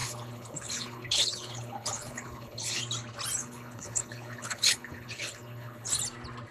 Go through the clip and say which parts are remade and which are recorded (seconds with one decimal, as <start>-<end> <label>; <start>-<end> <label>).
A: 0.0-2.8 remade; 2.8-3.4 recorded; 3.4-5.9 remade; 5.9-6.5 recorded